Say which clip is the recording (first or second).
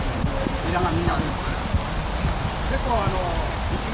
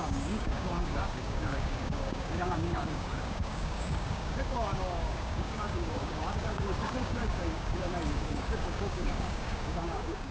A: first